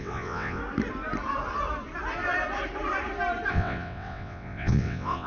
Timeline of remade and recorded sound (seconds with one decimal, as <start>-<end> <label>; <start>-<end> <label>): 0.0-0.6 remade; 0.6-3.5 recorded; 3.5-5.3 remade